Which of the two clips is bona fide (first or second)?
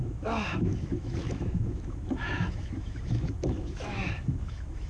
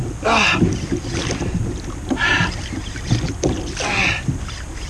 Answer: second